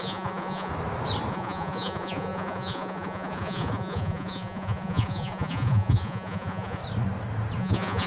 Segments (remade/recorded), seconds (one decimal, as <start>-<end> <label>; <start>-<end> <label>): 0.0-0.7 remade; 0.7-1.3 recorded; 1.3-6.8 remade; 6.8-7.6 recorded; 7.6-8.1 remade